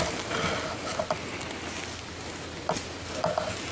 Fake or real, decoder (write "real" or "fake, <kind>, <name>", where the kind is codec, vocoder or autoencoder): real